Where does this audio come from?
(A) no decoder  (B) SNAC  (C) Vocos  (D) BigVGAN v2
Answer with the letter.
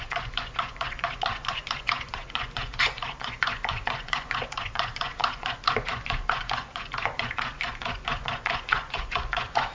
C